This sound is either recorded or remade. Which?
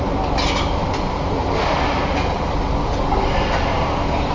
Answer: recorded